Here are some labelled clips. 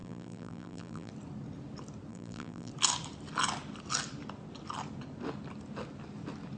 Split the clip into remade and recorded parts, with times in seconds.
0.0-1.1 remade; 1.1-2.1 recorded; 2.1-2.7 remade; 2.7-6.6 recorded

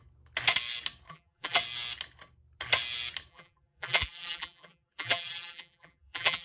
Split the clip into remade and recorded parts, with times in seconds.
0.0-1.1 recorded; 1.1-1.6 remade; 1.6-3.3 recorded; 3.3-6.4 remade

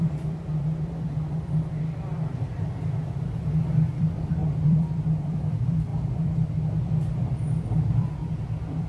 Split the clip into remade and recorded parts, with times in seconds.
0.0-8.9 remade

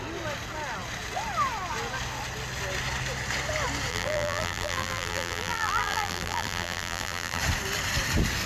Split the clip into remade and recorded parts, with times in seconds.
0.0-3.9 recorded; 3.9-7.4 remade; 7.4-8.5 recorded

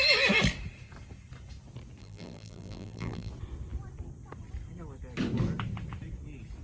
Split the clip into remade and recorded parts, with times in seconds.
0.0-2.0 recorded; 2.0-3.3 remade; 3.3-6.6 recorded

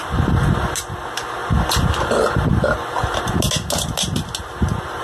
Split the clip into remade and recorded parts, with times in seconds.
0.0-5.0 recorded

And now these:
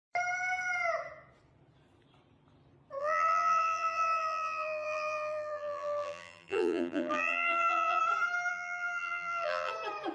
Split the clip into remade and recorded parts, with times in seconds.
0.0-3.0 recorded; 3.0-8.0 remade; 8.0-8.5 recorded; 8.5-9.7 remade; 9.7-10.1 recorded

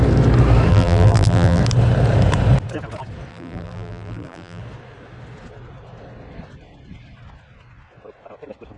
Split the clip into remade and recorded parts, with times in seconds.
0.0-0.7 recorded; 0.7-1.6 remade; 1.6-3.3 recorded; 3.3-4.6 remade; 4.6-8.8 recorded